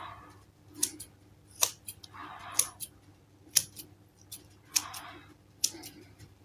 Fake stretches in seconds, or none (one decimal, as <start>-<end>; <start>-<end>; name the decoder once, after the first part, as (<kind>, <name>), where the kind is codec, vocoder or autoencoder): 0.0-2.2 (vocoder, BigVGAN v2); 6.0-6.4